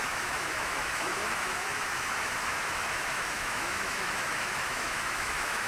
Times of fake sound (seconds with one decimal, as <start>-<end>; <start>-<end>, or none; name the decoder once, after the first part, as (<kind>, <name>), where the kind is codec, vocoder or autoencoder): 0.0-5.7 (autoencoder, DAC-VAE)